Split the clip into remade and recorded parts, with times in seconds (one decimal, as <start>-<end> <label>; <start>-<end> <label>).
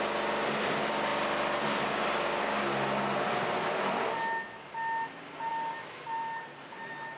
0.0-5.5 recorded; 5.5-7.2 remade